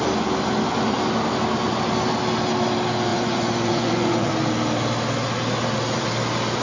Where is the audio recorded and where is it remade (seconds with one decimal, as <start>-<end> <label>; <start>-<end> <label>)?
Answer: 0.0-3.1 recorded; 3.1-4.3 remade; 4.3-6.6 recorded